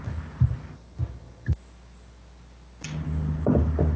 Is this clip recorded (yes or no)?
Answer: yes